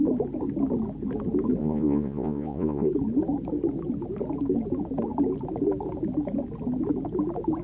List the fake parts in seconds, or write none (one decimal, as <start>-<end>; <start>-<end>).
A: 1.6-2.9